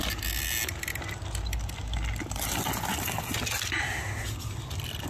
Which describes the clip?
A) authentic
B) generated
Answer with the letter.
A